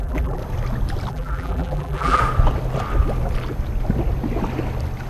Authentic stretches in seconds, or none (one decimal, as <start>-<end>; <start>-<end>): 0.4-1.1; 2.2-5.1